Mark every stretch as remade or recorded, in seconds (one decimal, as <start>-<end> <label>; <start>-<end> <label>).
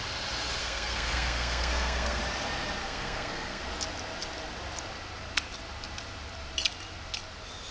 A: 0.0-0.6 recorded; 0.6-2.2 remade; 2.2-2.8 recorded; 2.8-3.6 remade; 3.6-7.7 recorded